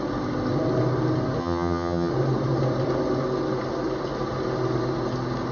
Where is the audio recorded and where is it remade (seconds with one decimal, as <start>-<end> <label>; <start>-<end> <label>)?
0.0-1.4 recorded; 1.4-2.1 remade; 2.1-5.5 recorded